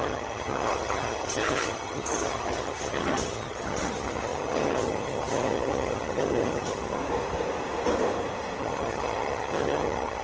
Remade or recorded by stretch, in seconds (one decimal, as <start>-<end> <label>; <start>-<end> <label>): 0.0-7.0 remade; 7.0-8.6 recorded; 8.6-10.2 remade